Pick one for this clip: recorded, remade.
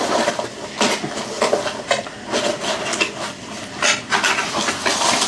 recorded